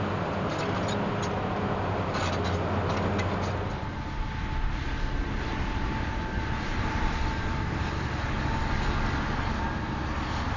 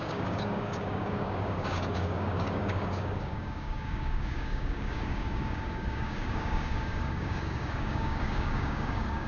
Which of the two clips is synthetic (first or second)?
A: second